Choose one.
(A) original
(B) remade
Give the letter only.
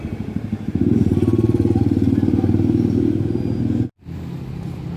A